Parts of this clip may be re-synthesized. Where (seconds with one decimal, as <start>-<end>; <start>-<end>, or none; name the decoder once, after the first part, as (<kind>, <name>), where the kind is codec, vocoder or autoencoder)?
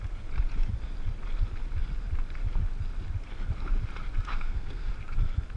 4.3-4.9 (codec, SNAC)